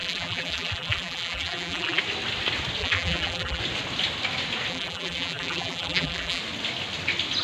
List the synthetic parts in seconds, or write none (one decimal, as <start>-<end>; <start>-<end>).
0.0-2.0; 2.8-3.6; 4.7-6.4